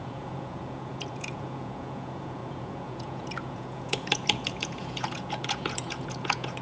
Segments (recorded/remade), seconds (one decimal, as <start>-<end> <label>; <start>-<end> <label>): 0.0-6.6 remade